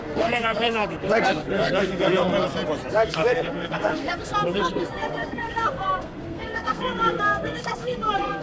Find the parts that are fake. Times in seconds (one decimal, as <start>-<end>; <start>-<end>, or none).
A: 0.0-2.3; 2.9-8.4